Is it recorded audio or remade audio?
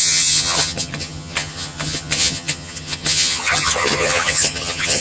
remade